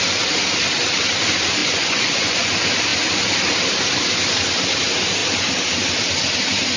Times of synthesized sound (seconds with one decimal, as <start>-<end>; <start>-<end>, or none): 1.6-2.5